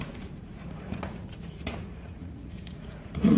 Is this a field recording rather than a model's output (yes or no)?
no